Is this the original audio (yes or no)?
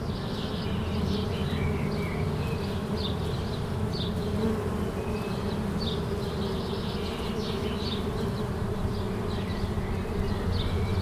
yes